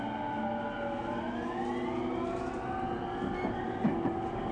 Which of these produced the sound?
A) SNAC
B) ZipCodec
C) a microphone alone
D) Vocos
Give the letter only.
C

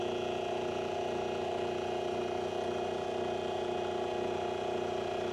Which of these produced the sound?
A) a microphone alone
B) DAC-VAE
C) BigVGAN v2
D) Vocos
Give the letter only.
A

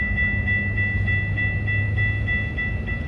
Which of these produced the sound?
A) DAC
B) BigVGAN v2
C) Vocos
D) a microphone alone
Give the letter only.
D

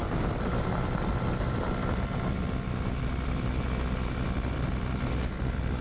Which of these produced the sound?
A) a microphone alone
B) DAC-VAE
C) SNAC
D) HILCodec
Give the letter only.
A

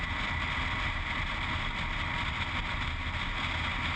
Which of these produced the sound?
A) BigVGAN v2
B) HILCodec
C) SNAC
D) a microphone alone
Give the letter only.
D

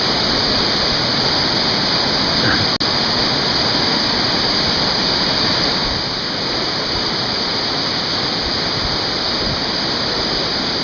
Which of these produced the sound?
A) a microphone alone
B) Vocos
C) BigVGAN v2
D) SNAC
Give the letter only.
A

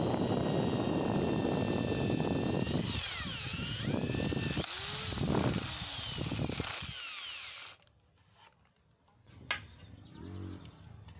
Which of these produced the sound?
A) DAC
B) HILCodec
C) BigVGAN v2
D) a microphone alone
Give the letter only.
D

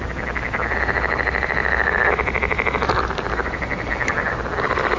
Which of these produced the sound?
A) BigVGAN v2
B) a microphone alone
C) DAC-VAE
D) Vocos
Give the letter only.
B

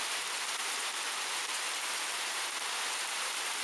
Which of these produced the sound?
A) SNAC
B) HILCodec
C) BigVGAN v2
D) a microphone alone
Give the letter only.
C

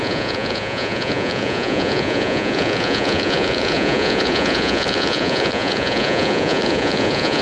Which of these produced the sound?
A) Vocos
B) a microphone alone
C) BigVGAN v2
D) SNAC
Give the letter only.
A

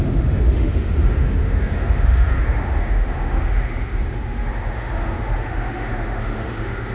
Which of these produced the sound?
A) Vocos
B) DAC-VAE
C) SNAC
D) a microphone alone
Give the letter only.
B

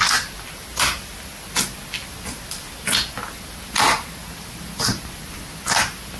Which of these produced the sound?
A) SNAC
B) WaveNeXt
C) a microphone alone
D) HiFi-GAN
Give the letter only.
C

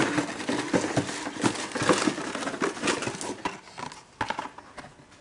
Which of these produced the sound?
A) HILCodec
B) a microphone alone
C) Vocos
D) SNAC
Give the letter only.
B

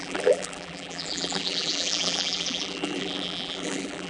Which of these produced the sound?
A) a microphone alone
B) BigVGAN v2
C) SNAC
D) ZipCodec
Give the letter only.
B